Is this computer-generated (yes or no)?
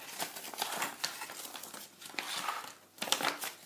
no